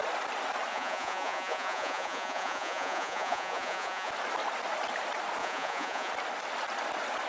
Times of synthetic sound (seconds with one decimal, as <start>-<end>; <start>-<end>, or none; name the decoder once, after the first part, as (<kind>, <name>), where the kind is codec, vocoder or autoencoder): 0.7-4.1 (vocoder, Vocos); 5.4-6.1